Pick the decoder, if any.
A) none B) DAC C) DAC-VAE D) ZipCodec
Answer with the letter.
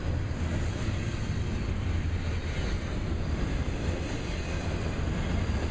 A